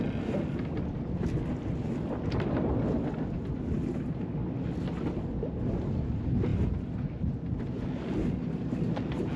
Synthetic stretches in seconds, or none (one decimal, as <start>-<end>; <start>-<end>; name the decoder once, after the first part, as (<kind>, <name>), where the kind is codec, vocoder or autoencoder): none